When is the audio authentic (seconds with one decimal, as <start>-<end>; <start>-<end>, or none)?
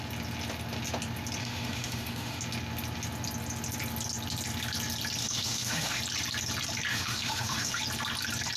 0.0-1.4; 2.4-5.2; 6.0-6.9; 7.8-8.6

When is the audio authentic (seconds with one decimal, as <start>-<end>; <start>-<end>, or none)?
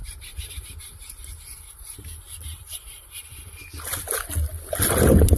2.2-2.6; 3.4-5.4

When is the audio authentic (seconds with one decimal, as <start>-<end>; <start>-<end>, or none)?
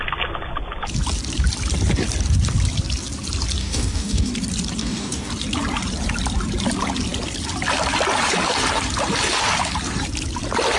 0.0-3.6; 4.3-4.8; 5.3-10.8